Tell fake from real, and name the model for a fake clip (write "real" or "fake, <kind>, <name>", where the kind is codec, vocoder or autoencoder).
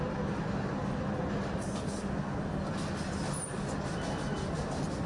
real